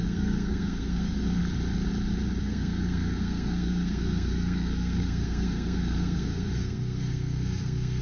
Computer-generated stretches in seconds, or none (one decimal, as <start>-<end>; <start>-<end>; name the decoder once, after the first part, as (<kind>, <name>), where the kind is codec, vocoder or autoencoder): 0.0-1.4 (codec, SNAC); 2.4-8.0